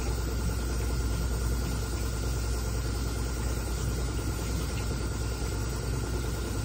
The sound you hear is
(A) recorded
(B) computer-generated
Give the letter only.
A